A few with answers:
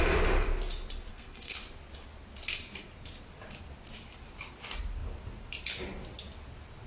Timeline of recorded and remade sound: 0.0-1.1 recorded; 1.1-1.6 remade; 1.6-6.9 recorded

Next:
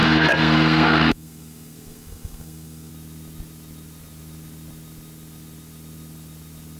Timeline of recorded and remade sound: 0.0-2.9 remade; 2.9-6.8 recorded

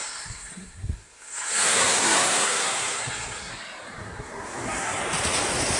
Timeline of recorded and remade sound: 0.0-3.5 remade; 3.5-4.0 recorded; 4.0-5.0 remade; 5.0-5.8 recorded